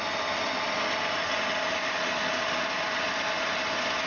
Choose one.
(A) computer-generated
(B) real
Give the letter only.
B